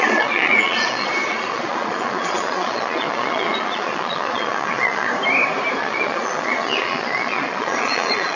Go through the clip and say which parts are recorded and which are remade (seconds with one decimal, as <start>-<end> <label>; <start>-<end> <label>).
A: 0.0-5.1 remade; 5.1-5.8 recorded; 5.8-8.4 remade